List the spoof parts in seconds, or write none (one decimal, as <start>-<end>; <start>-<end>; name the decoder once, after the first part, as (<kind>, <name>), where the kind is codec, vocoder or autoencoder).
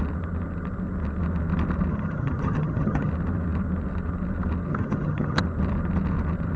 1.9-3.1 (vocoder, HiFi-GAN); 4.7-5.4